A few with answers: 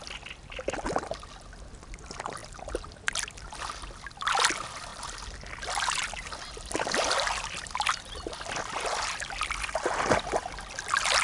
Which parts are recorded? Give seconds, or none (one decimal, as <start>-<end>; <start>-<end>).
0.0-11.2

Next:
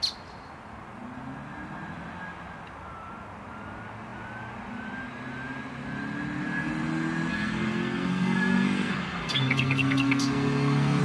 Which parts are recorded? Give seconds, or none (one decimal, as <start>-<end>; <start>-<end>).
0.0-7.3

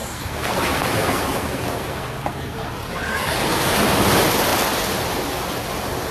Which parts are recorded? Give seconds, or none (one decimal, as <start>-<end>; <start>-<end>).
3.7-6.1